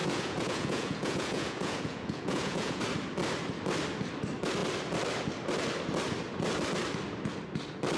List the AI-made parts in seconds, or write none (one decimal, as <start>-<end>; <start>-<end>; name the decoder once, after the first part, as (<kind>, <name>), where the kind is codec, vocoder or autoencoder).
0.0-2.8 (vocoder, Vocos)